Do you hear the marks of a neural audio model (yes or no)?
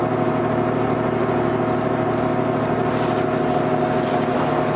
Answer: no